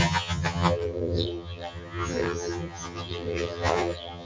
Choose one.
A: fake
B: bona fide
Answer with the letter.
A